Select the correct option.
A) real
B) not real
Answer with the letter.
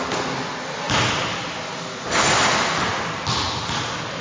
A